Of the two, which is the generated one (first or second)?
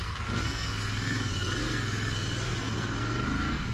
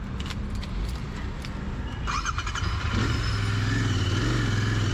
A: first